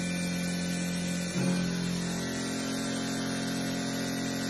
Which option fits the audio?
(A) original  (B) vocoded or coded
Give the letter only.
A